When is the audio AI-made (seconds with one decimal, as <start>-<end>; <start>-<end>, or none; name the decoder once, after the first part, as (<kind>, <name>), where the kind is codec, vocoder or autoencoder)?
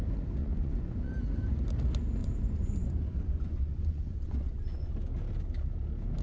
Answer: 0.4-1.1 (vocoder, Vocos); 2.2-4.9